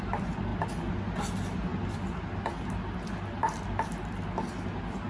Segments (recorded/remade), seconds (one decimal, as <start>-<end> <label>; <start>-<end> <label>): 0.0-5.1 recorded